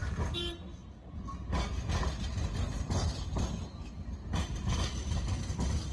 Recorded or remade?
recorded